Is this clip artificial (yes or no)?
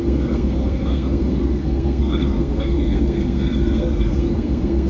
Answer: yes